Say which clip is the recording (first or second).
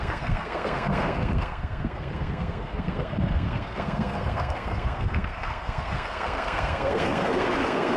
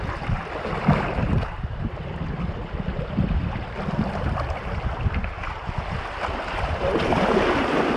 second